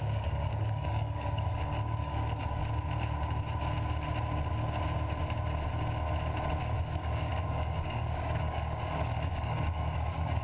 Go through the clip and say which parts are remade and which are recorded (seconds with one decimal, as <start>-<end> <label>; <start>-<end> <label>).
0.0-2.6 remade; 2.6-6.6 recorded; 6.6-10.4 remade